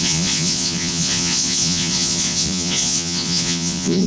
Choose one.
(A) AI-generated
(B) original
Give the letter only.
A